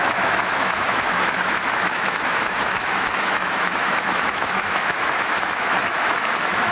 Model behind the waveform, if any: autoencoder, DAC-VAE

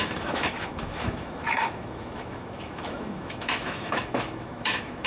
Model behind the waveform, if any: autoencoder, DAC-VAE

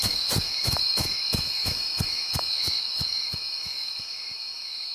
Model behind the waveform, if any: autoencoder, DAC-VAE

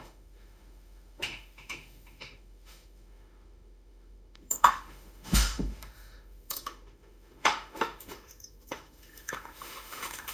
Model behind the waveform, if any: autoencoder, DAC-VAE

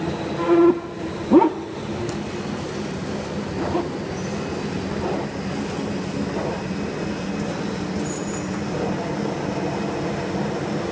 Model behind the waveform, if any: none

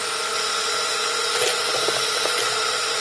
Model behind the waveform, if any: none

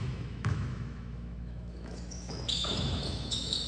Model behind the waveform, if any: autoencoder, DAC-VAE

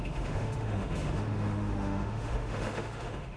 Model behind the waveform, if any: autoencoder, DAC-VAE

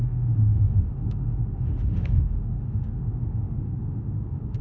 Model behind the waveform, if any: autoencoder, DAC-VAE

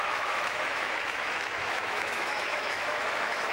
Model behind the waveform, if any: autoencoder, DAC-VAE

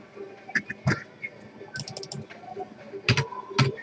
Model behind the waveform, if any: none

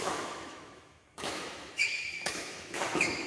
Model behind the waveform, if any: autoencoder, DAC-VAE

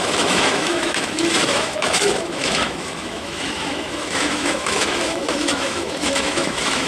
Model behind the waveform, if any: autoencoder, DAC-VAE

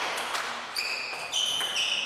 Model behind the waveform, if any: none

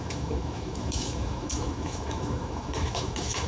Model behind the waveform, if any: autoencoder, DAC-VAE